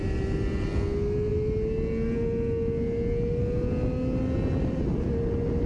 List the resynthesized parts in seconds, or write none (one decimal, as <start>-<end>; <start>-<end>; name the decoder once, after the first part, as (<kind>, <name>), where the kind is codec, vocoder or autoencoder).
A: none